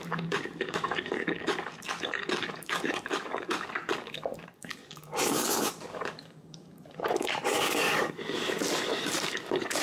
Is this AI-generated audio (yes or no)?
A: yes